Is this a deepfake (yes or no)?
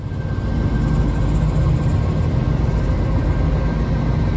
no